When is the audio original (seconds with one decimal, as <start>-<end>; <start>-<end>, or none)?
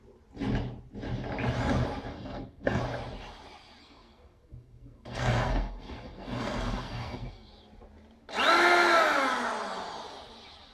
0.0-2.1; 2.8-3.8; 7.5-10.7